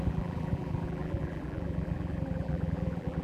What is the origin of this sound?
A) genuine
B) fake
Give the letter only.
B